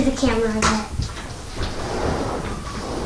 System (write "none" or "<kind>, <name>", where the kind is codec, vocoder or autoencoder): none